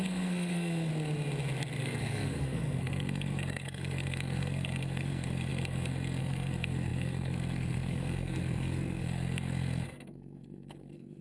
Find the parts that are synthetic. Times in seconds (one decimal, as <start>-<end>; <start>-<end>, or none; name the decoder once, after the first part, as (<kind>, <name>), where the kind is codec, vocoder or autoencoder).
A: 0.0-0.9 (codec, SNAC); 1.8-11.2